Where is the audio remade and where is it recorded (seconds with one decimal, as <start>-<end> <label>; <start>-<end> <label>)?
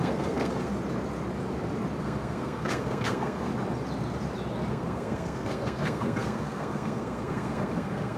0.0-0.7 remade; 0.7-2.0 recorded; 2.0-3.5 remade; 3.5-4.7 recorded; 4.7-8.2 remade